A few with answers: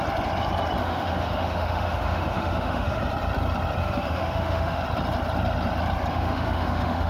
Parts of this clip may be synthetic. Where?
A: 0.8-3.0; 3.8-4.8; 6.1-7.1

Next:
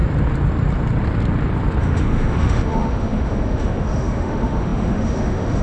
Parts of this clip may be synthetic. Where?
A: 1.8-5.6